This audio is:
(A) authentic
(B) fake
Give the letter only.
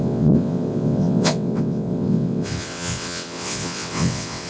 B